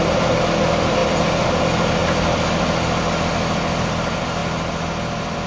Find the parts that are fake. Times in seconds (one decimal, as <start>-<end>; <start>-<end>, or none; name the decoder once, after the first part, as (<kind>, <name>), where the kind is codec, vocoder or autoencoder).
none